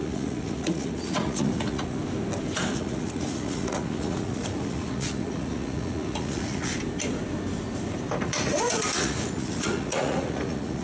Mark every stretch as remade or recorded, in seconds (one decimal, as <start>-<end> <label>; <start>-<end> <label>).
0.0-2.0 remade; 2.0-2.7 recorded; 2.7-6.7 remade; 6.7-8.2 recorded; 8.2-10.8 remade